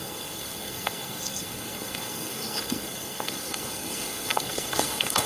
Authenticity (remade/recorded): remade